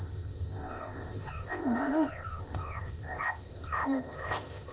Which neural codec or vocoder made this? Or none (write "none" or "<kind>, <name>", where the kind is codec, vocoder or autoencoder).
codec, ZipCodec